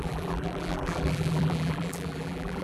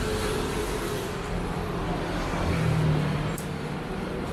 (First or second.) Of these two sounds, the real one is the second